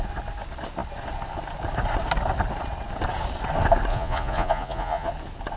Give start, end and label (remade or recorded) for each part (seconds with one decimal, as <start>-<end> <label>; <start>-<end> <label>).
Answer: 0.0-3.9 recorded; 3.9-5.1 remade; 5.1-5.6 recorded